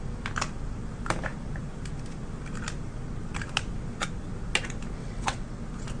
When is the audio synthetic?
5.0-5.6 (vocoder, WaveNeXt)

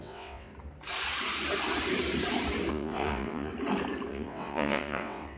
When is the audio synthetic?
0.0-0.5 (vocoder, WaveNeXt); 2.7-3.5; 4.1-5.4

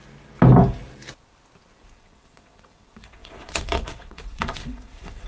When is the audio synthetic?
1.9-5.3 (vocoder, WaveNeXt)